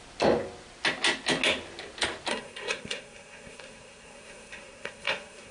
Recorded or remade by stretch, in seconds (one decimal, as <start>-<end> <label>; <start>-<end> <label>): 0.0-2.3 recorded; 2.3-5.5 remade